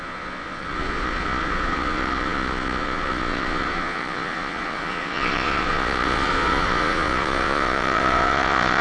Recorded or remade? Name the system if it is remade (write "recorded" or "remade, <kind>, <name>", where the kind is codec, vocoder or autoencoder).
remade, vocoder, Vocos